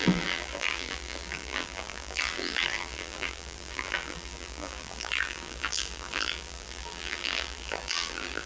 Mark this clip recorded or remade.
remade